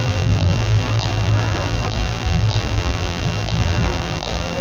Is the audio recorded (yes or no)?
no